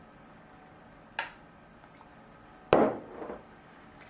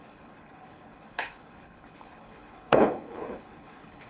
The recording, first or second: first